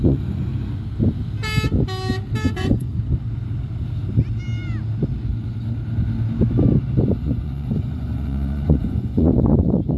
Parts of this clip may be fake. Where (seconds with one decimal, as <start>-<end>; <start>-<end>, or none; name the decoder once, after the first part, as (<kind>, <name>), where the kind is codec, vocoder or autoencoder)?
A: 0.0-0.5 (vocoder, Vocos); 2.5-2.9; 7.1-10.0